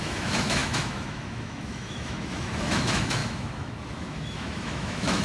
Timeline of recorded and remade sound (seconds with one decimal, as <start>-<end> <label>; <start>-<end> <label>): 0.0-5.2 remade